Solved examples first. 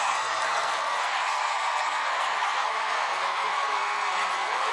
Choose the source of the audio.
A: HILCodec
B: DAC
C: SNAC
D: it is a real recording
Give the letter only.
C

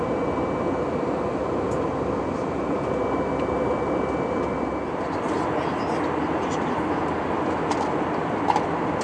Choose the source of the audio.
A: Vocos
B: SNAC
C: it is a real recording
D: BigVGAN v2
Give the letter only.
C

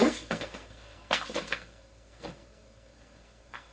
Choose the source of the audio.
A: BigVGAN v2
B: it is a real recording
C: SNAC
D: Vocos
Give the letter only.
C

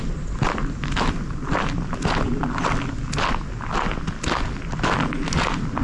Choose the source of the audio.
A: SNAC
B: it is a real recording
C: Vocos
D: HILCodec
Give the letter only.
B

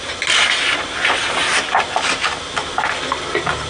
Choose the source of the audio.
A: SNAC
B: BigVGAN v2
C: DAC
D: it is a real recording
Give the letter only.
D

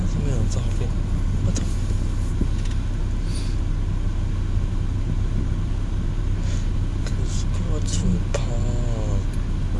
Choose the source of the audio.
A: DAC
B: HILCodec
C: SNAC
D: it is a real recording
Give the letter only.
D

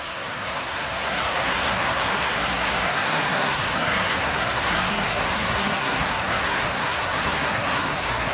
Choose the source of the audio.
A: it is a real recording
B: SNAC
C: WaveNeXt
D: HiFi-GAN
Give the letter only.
B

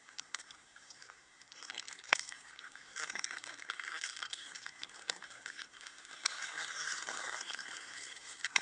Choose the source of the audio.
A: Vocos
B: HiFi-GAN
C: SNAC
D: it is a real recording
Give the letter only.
C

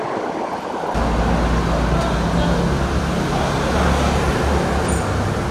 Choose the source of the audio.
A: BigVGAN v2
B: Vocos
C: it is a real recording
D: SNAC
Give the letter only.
C